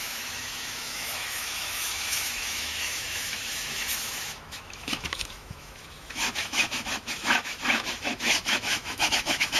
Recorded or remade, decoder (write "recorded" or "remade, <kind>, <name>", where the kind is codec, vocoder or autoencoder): remade, autoencoder, DAC-VAE